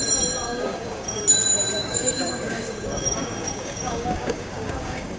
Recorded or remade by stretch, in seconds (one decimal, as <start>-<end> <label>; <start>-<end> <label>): 0.0-0.5 recorded; 0.5-1.2 remade; 1.2-1.8 recorded; 1.8-5.2 remade